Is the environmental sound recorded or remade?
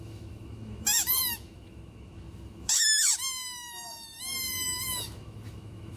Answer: remade